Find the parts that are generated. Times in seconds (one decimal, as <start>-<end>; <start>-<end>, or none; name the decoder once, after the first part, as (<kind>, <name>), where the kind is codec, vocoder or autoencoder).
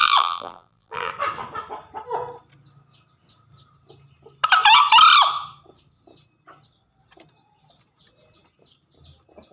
0.0-1.1 (vocoder, BigVGAN v2)